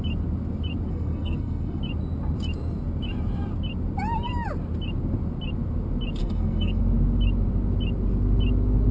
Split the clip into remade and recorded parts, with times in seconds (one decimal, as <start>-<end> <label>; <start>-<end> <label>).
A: 0.0-0.9 recorded; 0.9-1.8 remade; 1.8-6.2 recorded; 6.2-6.8 remade; 6.8-8.9 recorded